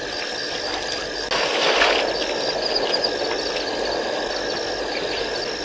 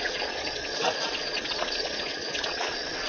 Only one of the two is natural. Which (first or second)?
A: first